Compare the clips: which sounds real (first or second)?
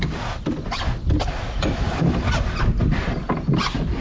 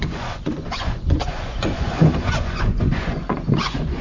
first